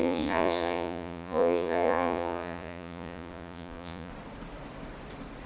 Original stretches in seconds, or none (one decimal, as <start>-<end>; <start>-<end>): 4.1-5.5